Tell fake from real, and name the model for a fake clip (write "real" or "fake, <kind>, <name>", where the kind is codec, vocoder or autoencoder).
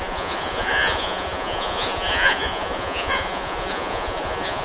fake, vocoder, Vocos